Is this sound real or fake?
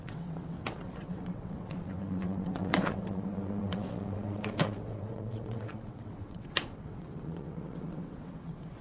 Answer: fake